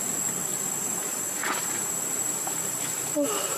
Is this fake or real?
real